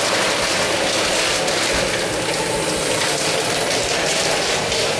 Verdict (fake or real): real